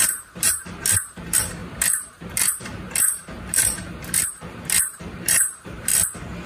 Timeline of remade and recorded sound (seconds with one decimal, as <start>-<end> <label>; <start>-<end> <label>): 0.0-5.9 remade; 5.9-6.5 recorded